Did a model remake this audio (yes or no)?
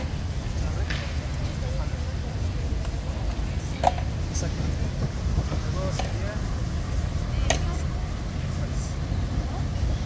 no